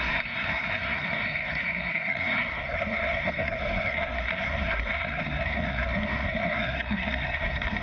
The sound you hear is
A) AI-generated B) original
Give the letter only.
A